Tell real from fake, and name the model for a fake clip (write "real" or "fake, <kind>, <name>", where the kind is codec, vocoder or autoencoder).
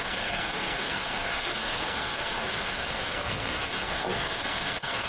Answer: fake, codec, SNAC